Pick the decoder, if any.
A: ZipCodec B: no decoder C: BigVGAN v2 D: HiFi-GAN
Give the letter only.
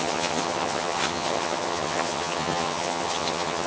D